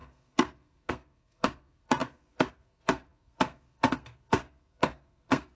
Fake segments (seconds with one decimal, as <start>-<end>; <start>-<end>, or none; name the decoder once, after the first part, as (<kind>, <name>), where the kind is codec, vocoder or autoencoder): 0.0-5.5 (codec, SNAC)